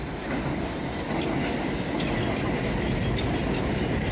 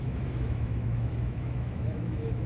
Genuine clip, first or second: first